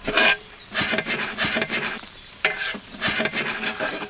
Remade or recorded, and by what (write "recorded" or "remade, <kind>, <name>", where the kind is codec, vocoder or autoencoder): remade, vocoder, BigVGAN v2